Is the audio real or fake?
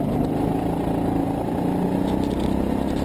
real